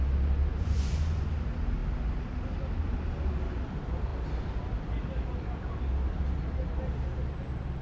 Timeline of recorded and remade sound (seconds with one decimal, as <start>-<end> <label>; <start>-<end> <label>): 0.0-0.5 recorded; 0.5-1.3 remade; 1.3-7.8 recorded